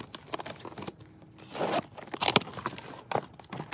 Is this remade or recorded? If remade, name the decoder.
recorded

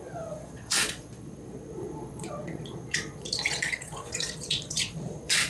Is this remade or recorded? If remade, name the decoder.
remade, vocoder, Vocos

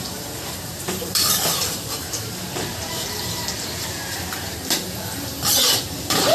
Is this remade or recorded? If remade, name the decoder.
remade, vocoder, BigVGAN v2